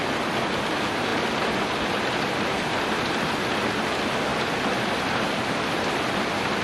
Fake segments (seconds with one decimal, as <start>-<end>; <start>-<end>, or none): none